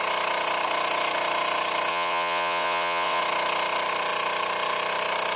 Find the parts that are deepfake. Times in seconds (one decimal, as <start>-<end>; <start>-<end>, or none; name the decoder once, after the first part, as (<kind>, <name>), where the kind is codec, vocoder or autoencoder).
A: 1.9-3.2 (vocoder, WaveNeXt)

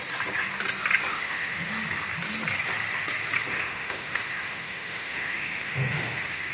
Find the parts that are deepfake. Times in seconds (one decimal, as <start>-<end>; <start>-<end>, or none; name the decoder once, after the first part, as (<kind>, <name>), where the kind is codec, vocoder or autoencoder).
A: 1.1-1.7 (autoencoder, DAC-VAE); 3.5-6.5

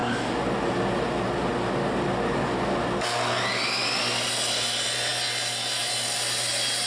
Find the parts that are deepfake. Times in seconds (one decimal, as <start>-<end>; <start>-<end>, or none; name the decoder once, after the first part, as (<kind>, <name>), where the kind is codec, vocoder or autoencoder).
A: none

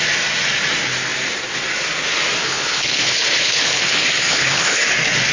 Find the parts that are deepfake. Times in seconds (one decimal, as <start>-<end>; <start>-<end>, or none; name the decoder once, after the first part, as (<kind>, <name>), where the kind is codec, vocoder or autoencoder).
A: 2.4-4.8 (codec, HILCodec)